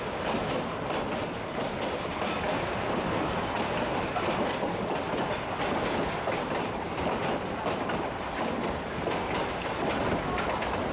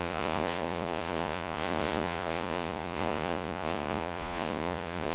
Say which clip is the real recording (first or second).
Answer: first